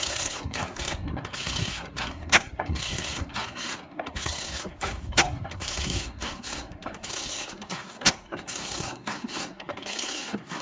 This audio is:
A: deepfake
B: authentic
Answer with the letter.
A